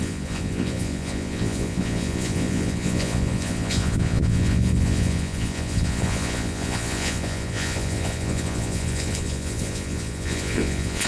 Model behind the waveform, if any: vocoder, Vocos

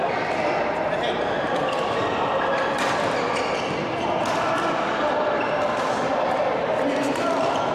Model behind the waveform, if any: vocoder, BigVGAN v2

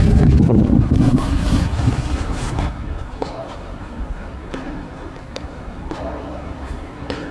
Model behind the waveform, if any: codec, SNAC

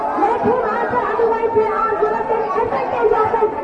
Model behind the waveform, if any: none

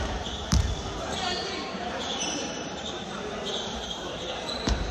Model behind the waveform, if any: vocoder, BigVGAN v2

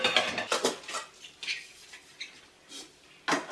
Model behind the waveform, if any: none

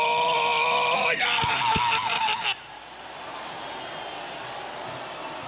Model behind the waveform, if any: none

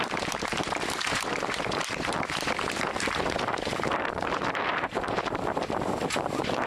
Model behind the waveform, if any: vocoder, BigVGAN v2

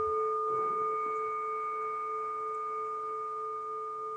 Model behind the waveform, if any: none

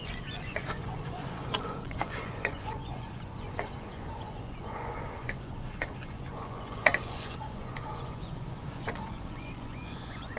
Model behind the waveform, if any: vocoder, Vocos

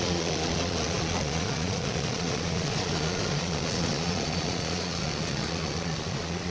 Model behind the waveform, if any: vocoder, Vocos